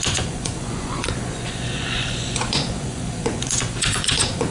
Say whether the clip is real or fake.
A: fake